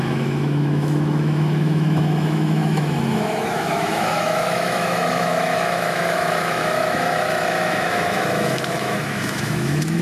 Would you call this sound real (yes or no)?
no